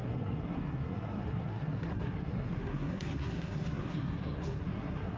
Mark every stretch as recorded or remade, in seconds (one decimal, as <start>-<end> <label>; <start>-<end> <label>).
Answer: 0.0-5.2 remade